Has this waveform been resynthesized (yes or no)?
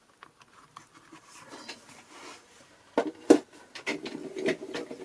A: no